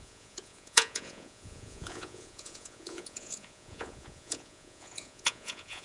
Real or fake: fake